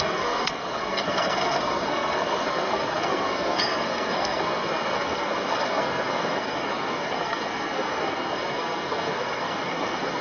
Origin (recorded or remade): remade